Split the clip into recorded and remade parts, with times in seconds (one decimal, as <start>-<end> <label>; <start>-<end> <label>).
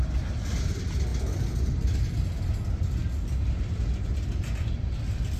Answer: 0.0-3.0 recorded; 3.0-3.5 remade; 3.5-5.4 recorded